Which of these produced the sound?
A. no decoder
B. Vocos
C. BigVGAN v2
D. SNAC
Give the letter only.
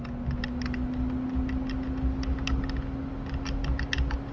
A